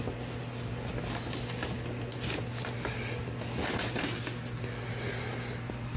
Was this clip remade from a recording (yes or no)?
no